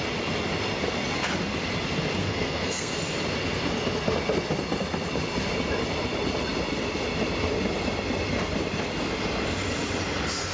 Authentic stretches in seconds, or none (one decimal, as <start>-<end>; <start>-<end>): 0.0-2.2; 2.9-10.5